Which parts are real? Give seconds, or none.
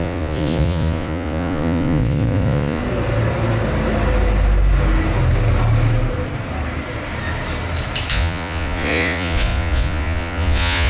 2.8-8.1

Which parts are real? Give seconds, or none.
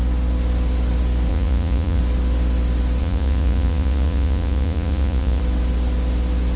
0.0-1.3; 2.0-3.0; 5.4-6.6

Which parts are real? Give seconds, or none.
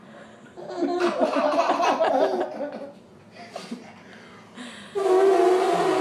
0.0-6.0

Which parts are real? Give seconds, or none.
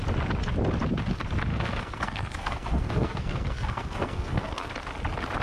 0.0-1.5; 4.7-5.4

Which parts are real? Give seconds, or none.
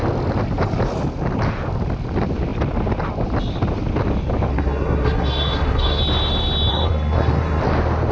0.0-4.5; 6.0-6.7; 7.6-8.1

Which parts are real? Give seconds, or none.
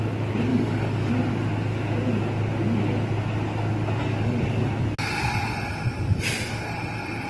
0.0-0.5; 1.1-4.0; 4.7-7.3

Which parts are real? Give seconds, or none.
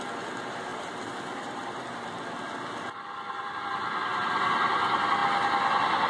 none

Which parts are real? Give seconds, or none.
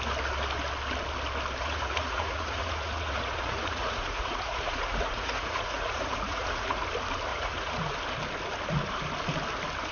0.0-1.6; 6.8-7.3; 7.9-9.9